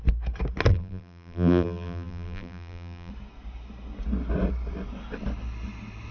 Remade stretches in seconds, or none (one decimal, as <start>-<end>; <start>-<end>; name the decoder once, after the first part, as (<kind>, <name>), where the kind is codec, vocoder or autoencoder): 0.7-3.1 (vocoder, BigVGAN v2)